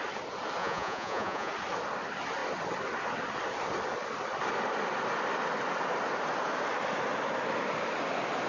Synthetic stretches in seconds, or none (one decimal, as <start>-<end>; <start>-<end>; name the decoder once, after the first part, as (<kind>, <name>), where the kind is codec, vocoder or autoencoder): 0.6-1.5 (vocoder, Vocos)